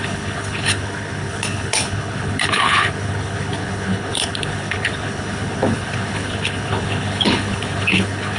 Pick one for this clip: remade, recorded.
remade